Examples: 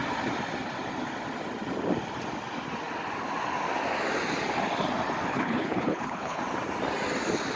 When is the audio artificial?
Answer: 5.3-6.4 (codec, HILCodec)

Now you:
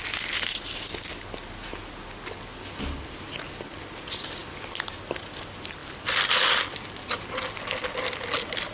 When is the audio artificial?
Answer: none

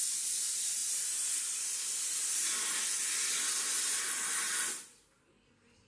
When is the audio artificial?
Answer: none